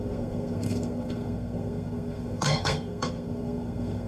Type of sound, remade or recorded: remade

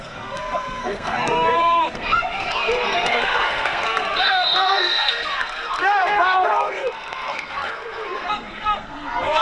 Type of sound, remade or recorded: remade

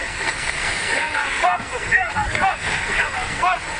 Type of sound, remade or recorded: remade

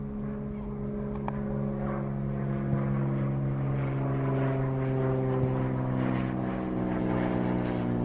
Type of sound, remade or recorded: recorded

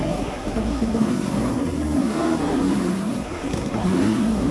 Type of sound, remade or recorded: remade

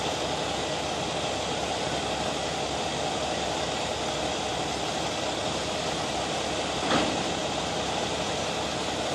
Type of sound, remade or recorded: recorded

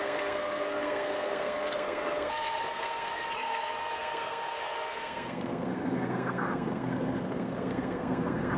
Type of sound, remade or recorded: remade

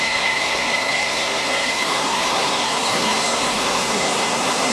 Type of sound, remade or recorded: remade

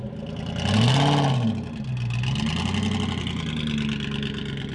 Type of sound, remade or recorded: recorded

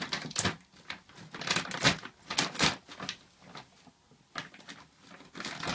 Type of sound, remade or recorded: recorded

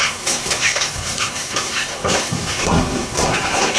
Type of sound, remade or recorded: remade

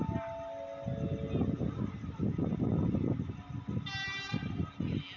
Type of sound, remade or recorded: recorded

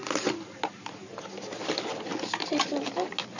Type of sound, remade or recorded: recorded